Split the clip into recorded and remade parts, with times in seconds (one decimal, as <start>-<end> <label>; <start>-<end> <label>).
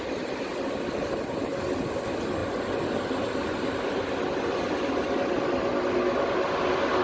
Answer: 0.0-7.0 recorded